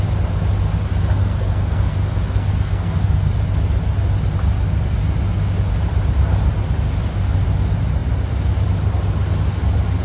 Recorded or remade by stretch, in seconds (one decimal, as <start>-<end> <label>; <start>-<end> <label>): 0.0-1.2 recorded; 1.2-3.3 remade; 3.3-10.0 recorded